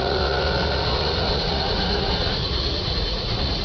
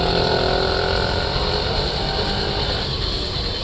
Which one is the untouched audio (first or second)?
second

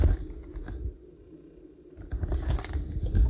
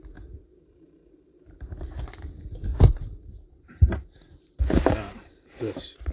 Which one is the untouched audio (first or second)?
first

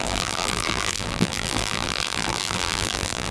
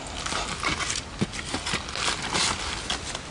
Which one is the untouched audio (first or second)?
second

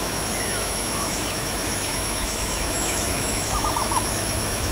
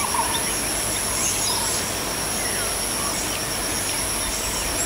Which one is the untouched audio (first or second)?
second